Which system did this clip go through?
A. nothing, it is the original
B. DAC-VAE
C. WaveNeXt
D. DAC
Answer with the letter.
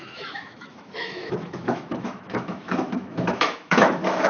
B